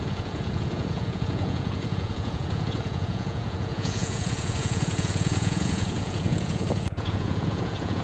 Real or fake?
fake